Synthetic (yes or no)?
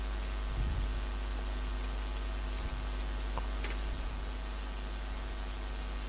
no